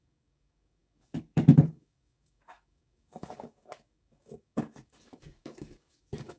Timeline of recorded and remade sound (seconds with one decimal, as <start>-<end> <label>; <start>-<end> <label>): 0.0-6.4 remade